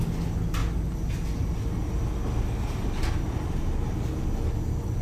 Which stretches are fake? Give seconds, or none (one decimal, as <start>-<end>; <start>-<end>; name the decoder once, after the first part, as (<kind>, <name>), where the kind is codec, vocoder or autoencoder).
none